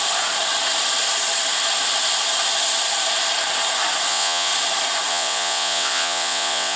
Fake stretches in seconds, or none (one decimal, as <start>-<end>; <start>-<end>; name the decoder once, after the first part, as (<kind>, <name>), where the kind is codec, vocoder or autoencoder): 4.1-4.5 (vocoder, WaveNeXt); 5.1-6.8